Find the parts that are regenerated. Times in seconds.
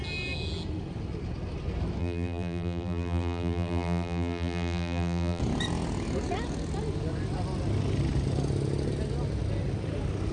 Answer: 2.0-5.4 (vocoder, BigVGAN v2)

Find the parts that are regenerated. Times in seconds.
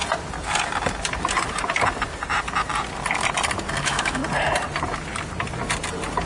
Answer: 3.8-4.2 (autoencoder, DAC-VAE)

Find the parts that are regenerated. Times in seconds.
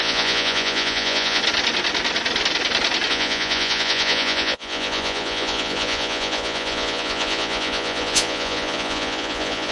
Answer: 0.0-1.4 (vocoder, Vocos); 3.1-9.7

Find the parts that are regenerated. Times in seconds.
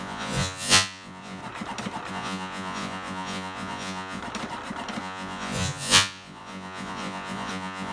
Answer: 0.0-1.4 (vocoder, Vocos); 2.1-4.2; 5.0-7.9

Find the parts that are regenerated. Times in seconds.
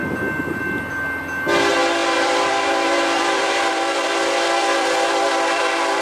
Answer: 2.0-5.6 (vocoder, BigVGAN v2)